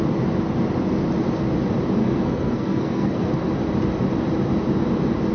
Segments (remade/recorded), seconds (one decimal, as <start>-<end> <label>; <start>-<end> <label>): 0.0-2.0 recorded; 2.0-3.3 remade; 3.3-5.3 recorded

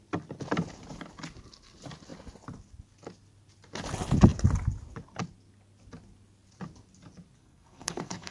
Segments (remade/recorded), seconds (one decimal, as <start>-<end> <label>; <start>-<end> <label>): 0.0-7.4 recorded; 7.4-8.3 remade